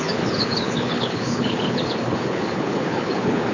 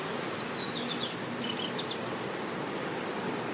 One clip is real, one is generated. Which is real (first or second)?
second